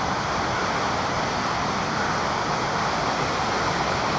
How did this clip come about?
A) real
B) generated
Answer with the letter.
A